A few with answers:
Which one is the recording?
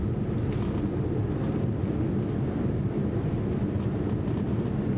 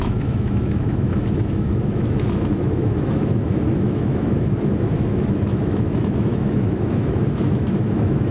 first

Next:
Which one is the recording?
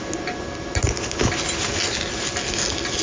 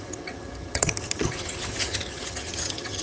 first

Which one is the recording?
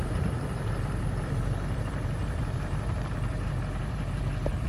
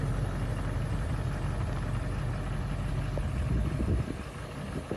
second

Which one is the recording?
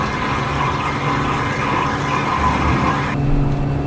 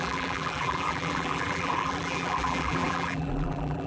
first